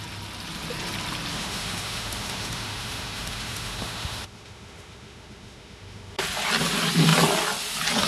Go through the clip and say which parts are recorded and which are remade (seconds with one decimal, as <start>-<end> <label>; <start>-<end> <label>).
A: 0.0-1.3 recorded; 1.3-6.2 remade; 6.2-8.1 recorded